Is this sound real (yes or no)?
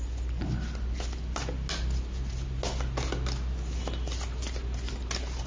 yes